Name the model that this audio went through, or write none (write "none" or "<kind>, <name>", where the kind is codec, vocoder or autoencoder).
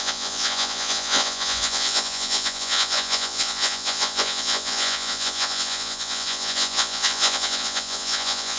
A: vocoder, Vocos